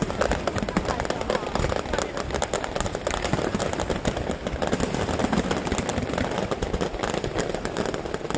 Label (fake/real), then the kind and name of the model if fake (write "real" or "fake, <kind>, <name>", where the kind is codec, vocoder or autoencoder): real